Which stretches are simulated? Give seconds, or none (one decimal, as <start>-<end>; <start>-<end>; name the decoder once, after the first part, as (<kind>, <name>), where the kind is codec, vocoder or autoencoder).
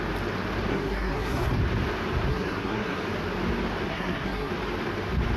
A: 0.7-1.6 (codec, SNAC); 2.3-3.0; 3.9-4.5